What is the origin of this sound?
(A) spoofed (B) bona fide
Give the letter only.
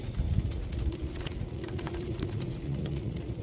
A